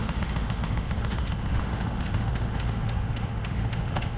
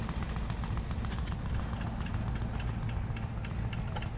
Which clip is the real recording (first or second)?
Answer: second